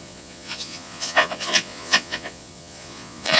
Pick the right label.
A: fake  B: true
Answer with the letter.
A